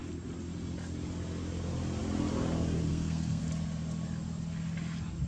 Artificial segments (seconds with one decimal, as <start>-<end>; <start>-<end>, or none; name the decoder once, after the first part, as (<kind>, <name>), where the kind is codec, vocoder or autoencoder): 2.9-3.4 (codec, SNAC)